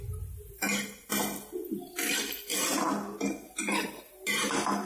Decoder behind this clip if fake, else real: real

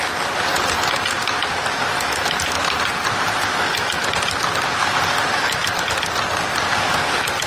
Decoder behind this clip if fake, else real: real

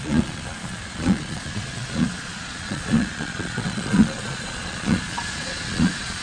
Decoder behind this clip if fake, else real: fake, vocoder, Vocos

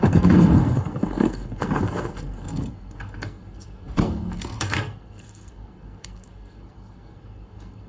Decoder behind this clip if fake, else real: fake, codec, SNAC